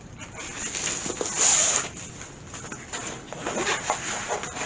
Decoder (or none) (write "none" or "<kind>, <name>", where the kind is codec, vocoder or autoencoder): none